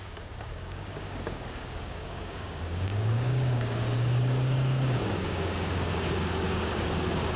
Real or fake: fake